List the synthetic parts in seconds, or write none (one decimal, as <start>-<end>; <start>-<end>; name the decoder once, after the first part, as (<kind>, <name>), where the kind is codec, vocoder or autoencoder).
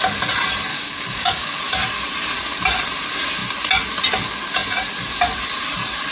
0.7-1.6 (codec, DAC)